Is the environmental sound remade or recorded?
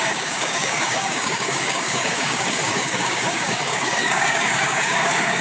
remade